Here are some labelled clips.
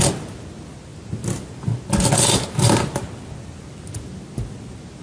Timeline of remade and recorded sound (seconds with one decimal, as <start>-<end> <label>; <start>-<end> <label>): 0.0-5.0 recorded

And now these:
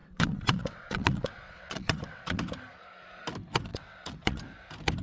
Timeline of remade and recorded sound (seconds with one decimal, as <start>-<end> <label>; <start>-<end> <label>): 0.0-2.4 remade; 2.4-3.7 recorded; 3.7-4.4 remade; 4.4-5.0 recorded

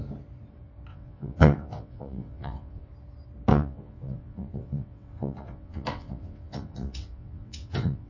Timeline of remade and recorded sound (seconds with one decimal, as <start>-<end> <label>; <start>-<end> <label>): 0.0-0.9 recorded; 0.9-2.9 remade; 2.9-3.5 recorded; 3.5-8.1 remade

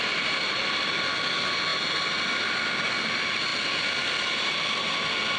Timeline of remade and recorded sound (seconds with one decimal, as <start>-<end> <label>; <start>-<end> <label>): 0.0-5.4 recorded

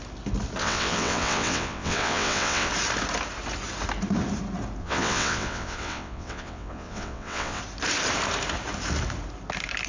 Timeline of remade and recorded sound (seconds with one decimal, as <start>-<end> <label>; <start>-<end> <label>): 0.0-0.6 recorded; 0.6-2.7 remade; 2.7-4.8 recorded; 4.8-7.6 remade; 7.6-9.9 recorded

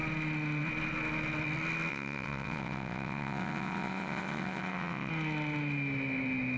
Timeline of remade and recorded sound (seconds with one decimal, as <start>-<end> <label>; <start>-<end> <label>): 0.0-1.9 recorded; 1.9-5.1 remade; 5.1-6.6 recorded

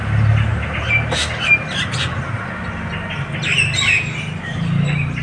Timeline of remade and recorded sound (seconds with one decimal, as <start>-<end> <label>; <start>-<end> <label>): 0.0-5.2 recorded